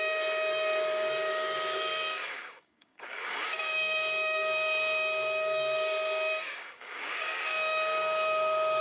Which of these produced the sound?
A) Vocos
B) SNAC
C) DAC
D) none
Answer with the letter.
C